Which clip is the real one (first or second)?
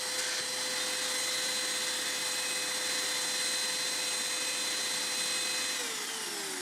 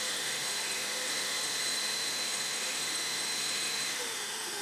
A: first